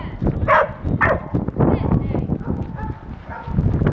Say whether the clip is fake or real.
real